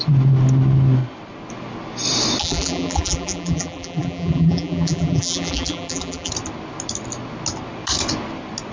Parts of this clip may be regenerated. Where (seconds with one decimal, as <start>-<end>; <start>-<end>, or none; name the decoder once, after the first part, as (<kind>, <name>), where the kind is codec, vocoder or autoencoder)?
2.4-6.3 (vocoder, BigVGAN v2)